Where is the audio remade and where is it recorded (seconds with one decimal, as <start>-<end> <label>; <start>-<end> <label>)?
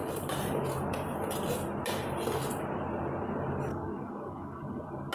0.0-3.7 recorded; 3.7-4.6 remade; 4.6-5.1 recorded